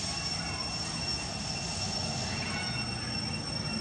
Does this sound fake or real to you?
real